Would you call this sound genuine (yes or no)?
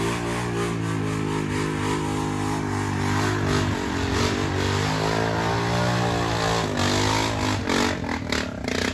yes